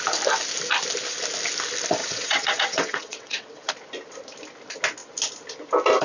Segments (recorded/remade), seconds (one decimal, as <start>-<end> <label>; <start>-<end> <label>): 0.0-2.0 recorded; 2.0-3.7 remade; 3.7-6.0 recorded